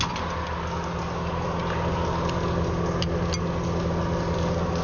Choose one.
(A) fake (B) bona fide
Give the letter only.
B